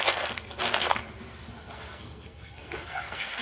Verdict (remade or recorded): remade